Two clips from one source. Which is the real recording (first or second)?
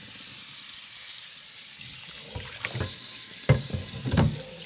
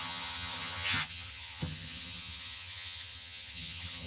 first